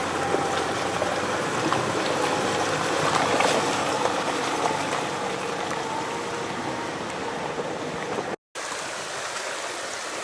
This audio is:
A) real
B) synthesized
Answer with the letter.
A